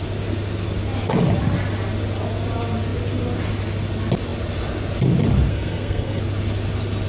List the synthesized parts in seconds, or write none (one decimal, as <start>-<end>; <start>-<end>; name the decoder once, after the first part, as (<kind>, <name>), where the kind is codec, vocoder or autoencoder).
5.5-6.2 (codec, SNAC)